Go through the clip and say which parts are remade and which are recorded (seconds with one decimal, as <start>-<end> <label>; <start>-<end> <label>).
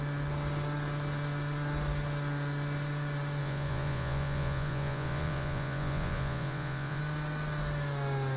0.0-3.4 recorded; 3.4-7.0 remade; 7.0-8.4 recorded